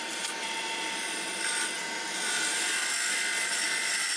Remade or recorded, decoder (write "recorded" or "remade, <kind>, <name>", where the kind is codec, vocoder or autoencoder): recorded